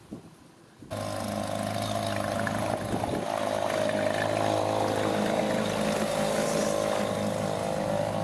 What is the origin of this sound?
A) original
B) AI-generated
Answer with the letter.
A